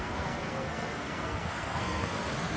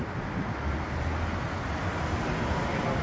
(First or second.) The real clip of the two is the second